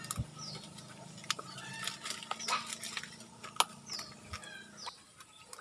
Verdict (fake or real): real